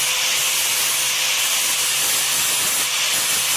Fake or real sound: real